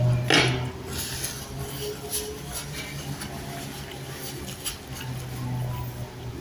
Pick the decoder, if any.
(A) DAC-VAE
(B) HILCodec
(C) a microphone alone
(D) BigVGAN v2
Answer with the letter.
C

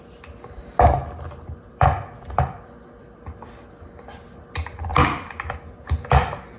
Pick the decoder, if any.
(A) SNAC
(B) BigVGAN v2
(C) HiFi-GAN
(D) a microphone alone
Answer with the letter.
D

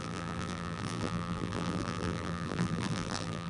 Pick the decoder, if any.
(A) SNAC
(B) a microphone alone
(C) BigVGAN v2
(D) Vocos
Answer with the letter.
C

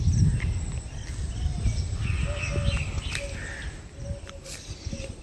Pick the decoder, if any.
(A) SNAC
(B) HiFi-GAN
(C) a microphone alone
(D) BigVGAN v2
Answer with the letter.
C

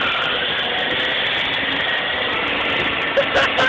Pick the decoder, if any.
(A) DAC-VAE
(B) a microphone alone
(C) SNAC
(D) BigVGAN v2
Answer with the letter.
B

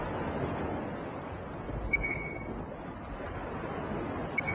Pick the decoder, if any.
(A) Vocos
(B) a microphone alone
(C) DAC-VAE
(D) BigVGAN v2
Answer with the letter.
B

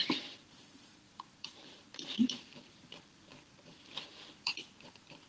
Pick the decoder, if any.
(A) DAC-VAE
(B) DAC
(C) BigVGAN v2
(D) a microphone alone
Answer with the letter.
C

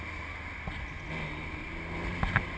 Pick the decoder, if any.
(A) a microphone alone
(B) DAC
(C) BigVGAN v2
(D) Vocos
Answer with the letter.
A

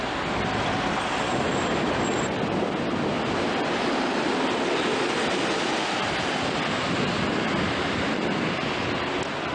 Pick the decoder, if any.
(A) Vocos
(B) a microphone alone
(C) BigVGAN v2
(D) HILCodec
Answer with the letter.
B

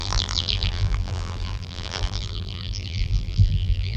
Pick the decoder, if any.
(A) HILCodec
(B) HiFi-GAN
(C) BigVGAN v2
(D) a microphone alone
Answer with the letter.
C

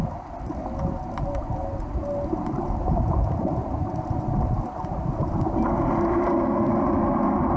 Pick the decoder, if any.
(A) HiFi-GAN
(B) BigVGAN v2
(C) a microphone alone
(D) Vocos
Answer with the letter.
C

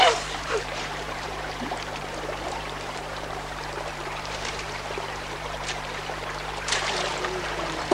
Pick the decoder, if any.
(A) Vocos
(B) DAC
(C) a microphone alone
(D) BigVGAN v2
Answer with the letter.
D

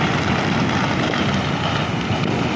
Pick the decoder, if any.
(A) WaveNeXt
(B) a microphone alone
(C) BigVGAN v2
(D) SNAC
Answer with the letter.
B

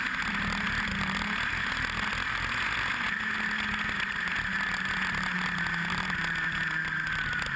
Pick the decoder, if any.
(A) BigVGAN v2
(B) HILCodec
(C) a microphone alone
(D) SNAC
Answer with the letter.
C